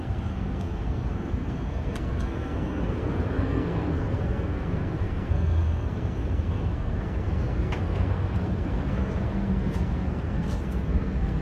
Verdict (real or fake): fake